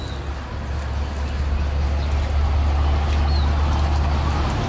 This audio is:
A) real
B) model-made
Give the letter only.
A